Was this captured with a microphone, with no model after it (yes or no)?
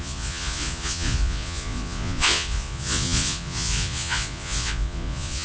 no